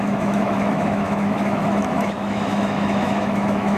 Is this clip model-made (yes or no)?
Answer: yes